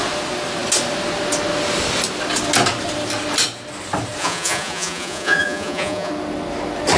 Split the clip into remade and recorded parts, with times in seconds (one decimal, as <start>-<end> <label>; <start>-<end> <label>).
0.0-4.2 recorded; 4.2-6.1 remade; 6.1-7.0 recorded

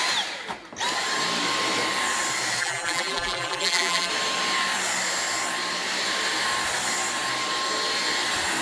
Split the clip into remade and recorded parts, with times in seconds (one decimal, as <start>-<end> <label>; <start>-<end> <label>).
0.0-2.6 recorded; 2.6-4.1 remade; 4.1-8.6 recorded

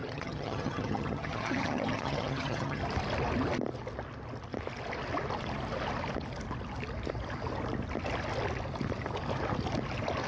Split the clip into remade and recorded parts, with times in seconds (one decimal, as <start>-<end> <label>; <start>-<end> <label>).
0.0-2.8 remade; 2.8-10.3 recorded

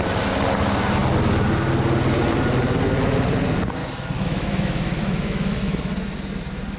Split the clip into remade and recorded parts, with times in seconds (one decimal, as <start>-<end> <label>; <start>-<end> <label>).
0.0-3.8 recorded; 3.8-5.9 remade; 5.9-6.8 recorded